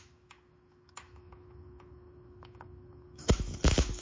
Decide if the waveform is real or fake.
fake